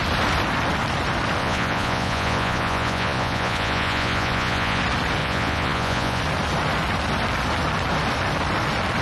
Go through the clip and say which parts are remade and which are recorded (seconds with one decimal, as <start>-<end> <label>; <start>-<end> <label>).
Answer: 0.0-1.4 recorded; 1.4-4.8 remade; 4.8-5.2 recorded; 5.2-6.2 remade; 6.2-9.0 recorded